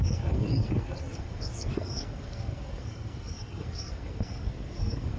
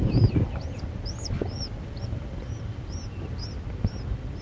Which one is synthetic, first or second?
first